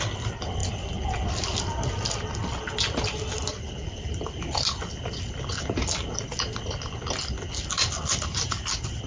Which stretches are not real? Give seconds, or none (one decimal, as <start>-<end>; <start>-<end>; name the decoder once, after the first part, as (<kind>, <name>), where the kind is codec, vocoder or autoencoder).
none